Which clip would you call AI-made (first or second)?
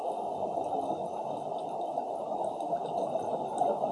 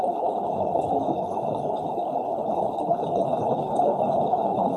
second